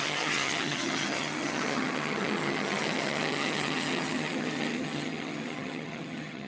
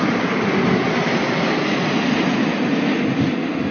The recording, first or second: second